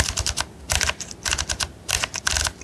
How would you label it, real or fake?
real